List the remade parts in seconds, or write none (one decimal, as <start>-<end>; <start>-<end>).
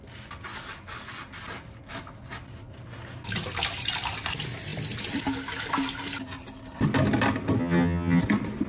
7.6-8.2